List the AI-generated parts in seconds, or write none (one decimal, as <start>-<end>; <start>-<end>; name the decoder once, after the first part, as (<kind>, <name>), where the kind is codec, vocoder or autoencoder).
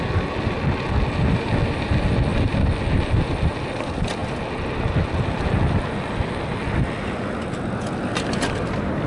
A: none